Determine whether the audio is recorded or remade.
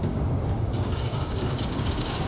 remade